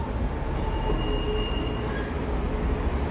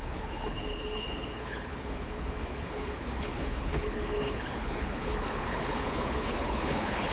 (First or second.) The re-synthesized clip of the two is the second